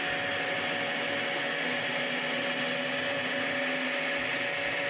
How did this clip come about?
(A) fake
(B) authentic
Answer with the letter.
B